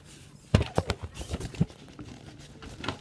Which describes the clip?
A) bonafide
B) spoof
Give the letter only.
A